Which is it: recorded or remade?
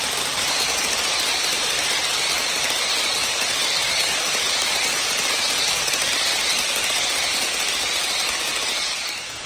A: recorded